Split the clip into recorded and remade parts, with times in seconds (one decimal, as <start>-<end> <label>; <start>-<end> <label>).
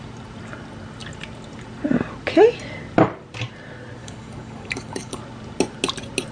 0.0-4.0 recorded; 4.0-5.2 remade; 5.2-6.3 recorded